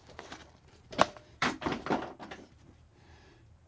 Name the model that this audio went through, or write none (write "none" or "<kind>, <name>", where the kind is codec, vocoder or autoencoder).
vocoder, BigVGAN v2